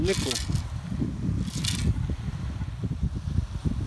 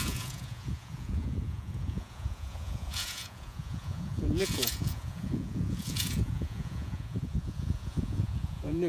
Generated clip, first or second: second